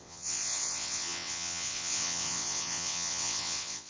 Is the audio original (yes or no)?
no